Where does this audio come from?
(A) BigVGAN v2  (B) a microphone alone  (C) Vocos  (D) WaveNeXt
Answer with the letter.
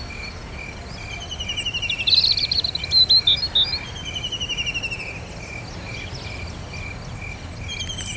B